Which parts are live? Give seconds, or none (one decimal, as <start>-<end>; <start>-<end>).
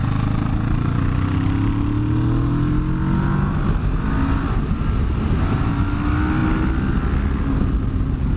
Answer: 0.0-8.4